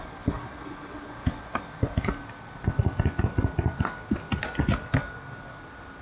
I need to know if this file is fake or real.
real